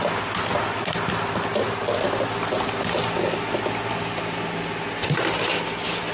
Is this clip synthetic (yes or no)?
no